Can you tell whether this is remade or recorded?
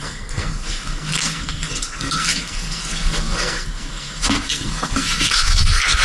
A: remade